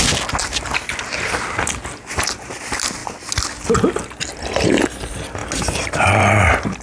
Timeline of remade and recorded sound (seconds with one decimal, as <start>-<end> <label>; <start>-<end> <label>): 0.0-6.8 recorded